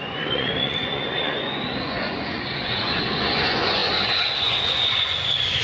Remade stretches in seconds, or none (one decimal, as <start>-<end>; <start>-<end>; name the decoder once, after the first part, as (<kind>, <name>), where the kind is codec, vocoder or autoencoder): 0.0-5.6 (vocoder, Vocos)